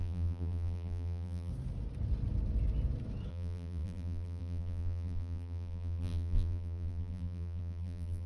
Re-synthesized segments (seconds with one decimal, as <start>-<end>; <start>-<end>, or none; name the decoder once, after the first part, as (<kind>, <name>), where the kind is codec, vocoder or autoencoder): 0.0-1.5 (vocoder, BigVGAN v2); 3.3-8.3